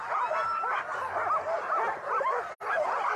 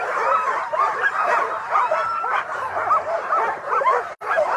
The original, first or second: first